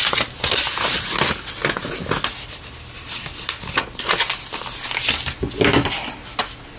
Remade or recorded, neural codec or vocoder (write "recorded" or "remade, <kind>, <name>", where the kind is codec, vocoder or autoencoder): recorded